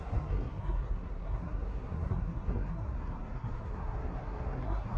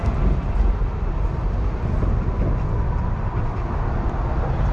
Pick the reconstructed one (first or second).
first